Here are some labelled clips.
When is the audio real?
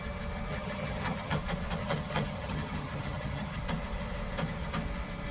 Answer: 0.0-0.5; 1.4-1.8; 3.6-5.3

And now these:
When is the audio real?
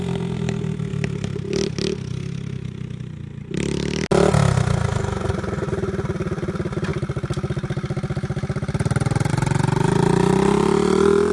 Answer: 0.0-11.3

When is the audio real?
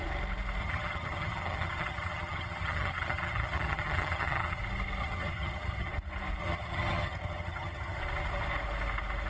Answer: 0.0-0.6; 4.6-5.0; 5.9-6.4; 8.0-9.3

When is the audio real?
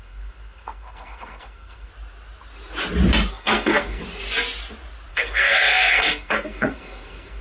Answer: 1.9-3.3; 4.0-5.1